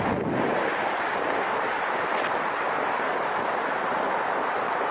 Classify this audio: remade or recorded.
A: recorded